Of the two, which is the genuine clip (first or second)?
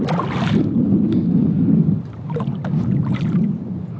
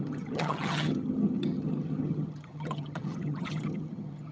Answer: first